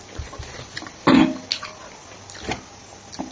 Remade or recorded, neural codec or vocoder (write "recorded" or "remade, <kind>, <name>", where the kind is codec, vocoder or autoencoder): recorded